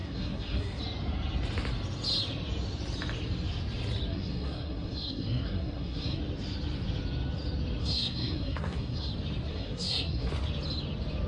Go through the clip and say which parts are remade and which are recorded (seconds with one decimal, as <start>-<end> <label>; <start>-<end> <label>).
0.0-0.8 remade; 0.8-4.1 recorded; 4.1-6.2 remade; 6.2-7.8 recorded; 7.8-9.1 remade; 9.1-9.5 recorded; 9.5-10.3 remade; 10.3-11.3 recorded